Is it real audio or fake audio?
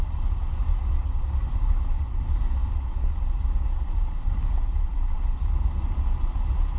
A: fake